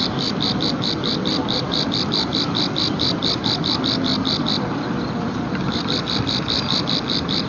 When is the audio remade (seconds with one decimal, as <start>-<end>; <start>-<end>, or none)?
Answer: 0.0-2.3; 5.0-7.5